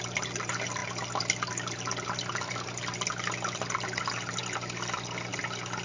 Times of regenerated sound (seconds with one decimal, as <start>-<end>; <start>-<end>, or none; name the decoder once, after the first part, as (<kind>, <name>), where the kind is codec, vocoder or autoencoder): none